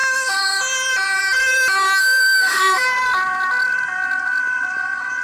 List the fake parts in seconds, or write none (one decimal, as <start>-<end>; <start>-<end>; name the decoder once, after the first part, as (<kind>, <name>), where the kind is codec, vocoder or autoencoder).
0.0-0.6 (autoencoder, DAC-VAE); 2.0-2.8